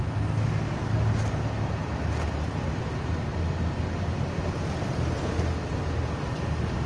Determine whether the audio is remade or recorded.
recorded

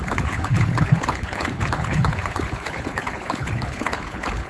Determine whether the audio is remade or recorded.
remade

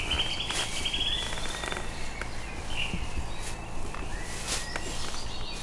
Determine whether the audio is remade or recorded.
recorded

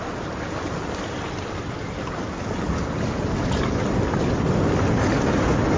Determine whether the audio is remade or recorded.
recorded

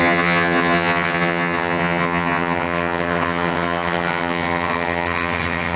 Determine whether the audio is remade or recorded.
remade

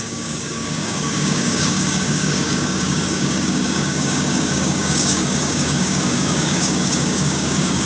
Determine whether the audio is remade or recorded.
remade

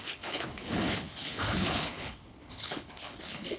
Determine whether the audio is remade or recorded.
remade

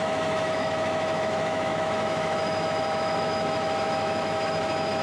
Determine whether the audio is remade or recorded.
remade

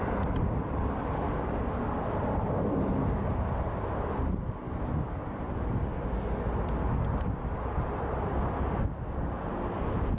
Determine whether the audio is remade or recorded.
recorded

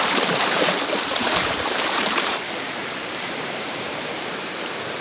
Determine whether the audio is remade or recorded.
remade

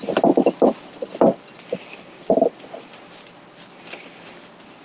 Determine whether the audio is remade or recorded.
recorded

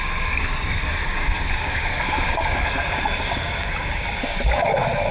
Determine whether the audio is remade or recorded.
remade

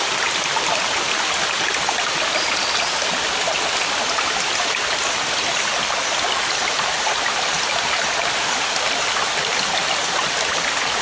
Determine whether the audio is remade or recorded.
recorded